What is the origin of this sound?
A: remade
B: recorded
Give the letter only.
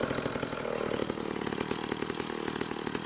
B